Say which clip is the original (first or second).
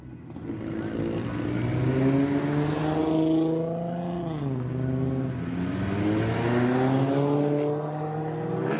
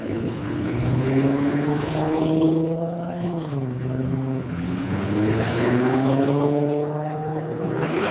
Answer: first